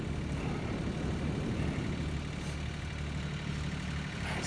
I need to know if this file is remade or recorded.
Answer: recorded